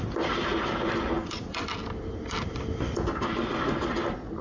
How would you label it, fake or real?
real